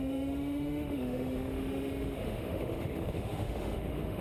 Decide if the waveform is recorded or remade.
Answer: remade